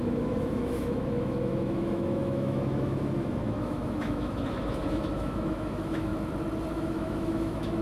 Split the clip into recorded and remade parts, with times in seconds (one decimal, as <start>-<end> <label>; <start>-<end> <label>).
0.0-6.1 remade; 6.1-6.7 recorded; 6.7-7.8 remade